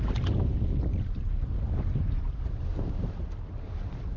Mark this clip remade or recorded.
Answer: recorded